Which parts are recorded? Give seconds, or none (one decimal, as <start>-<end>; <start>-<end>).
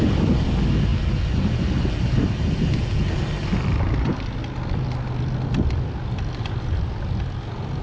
0.0-7.8